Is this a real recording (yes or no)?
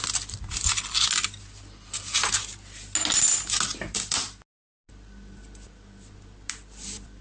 yes